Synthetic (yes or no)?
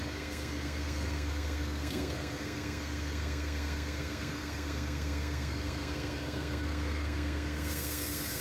yes